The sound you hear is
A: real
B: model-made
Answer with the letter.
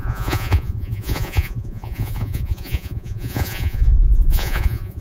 B